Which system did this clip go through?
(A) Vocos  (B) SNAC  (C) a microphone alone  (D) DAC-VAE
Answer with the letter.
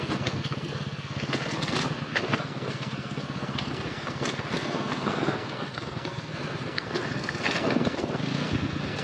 B